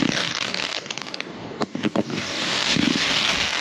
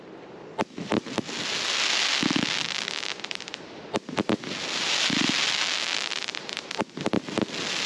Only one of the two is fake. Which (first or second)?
first